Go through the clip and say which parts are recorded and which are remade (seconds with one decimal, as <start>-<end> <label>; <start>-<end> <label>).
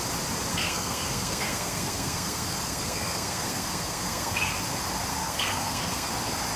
0.0-0.5 recorded; 0.5-4.5 remade; 4.5-5.1 recorded; 5.1-6.1 remade; 6.1-6.6 recorded